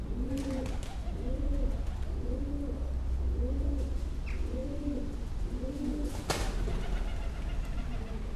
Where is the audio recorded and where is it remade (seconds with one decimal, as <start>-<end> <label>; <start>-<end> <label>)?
0.0-8.4 recorded